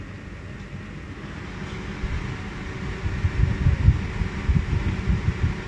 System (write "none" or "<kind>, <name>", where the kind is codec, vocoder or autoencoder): none